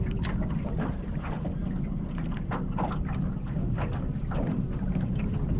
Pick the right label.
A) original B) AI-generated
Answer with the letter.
A